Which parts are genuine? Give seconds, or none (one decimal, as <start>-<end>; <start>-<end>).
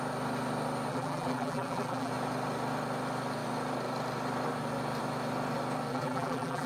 0.0-0.9; 2.1-5.9